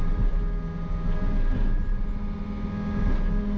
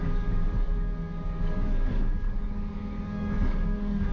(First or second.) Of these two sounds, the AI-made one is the second